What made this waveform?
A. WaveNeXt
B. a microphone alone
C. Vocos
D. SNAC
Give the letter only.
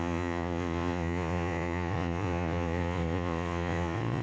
C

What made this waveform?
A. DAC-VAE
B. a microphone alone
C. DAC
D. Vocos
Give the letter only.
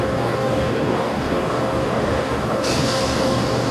C